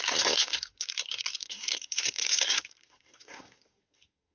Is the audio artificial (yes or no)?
yes